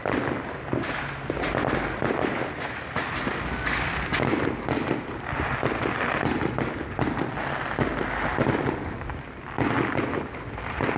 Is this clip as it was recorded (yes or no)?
yes